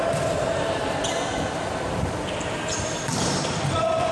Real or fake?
real